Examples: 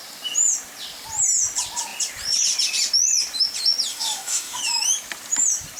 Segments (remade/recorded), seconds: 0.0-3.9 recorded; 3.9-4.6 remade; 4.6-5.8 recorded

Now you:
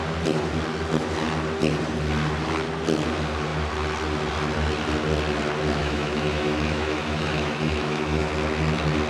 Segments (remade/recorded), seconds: 0.0-5.8 recorded; 5.8-8.3 remade; 8.3-9.1 recorded